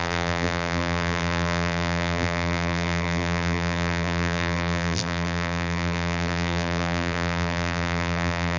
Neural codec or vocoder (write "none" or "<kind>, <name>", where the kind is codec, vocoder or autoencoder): vocoder, BigVGAN v2